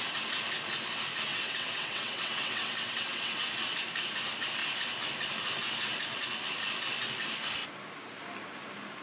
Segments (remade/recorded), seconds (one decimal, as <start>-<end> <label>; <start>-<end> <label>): 0.0-1.3 recorded; 1.3-3.5 remade; 3.5-9.0 recorded